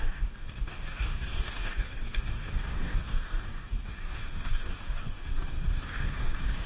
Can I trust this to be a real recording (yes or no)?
no